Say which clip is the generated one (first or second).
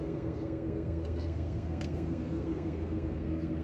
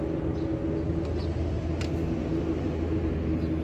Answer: first